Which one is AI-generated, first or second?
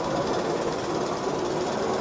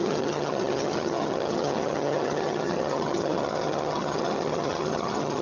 second